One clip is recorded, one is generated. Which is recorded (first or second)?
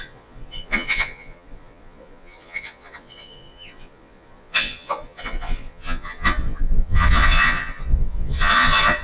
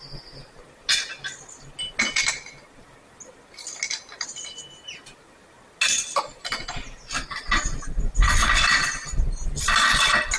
second